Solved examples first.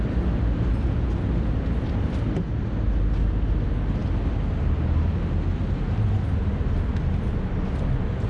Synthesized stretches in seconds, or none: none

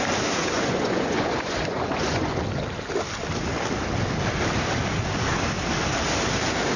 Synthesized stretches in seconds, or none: 0.4-2.4 (vocoder, Vocos)

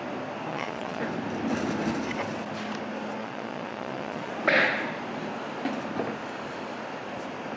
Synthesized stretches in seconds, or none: 0.5-1.0 (vocoder, Vocos); 3.2-4.3

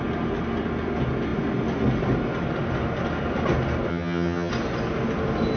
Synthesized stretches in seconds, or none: 3.9-4.5 (vocoder, HiFi-GAN)

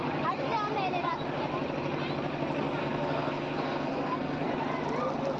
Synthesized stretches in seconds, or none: 2.8-4.5 (codec, SNAC)

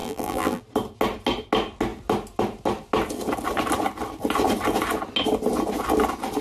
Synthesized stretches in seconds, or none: 0.0-0.6 (vocoder, BigVGAN v2)

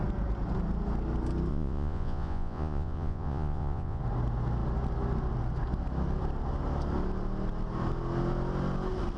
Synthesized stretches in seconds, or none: 1.5-4.0 (vocoder, Vocos)